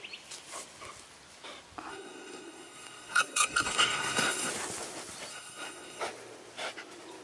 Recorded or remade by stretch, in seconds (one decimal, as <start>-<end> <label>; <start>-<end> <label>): 0.0-1.9 recorded; 1.9-4.5 remade; 4.5-5.3 recorded; 5.3-6.0 remade; 6.0-7.2 recorded